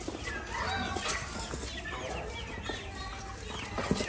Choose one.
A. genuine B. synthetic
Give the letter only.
A